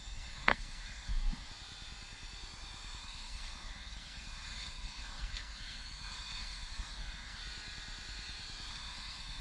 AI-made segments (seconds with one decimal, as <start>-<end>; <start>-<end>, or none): 0.0-1.5; 3.0-7.4; 8.7-9.4

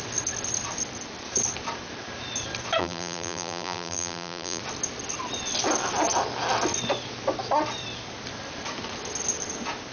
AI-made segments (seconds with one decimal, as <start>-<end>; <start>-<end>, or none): 2.8-4.6